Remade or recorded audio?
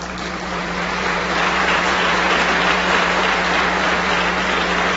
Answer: remade